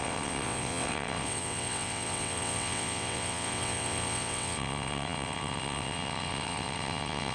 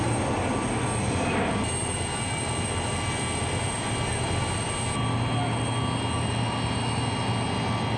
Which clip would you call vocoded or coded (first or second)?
first